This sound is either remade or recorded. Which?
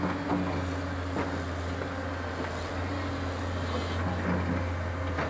recorded